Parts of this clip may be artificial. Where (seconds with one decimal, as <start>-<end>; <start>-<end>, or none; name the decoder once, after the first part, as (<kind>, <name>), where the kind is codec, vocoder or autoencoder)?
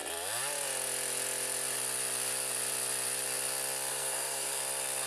3.9-4.6 (codec, SNAC)